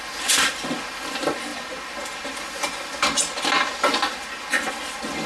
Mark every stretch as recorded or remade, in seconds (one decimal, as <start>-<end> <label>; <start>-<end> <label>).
0.0-5.3 recorded